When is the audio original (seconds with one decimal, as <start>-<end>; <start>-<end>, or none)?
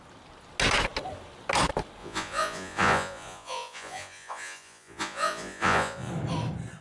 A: 0.0-2.0; 6.1-6.8